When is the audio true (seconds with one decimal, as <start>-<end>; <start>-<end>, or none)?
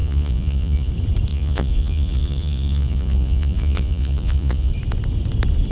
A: 0.9-1.3; 4.7-5.7